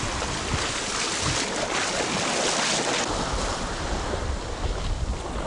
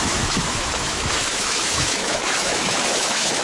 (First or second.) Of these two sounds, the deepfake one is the second